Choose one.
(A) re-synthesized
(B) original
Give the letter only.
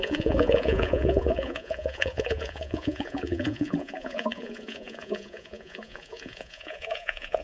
A